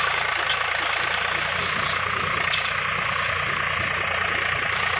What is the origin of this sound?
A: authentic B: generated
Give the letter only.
A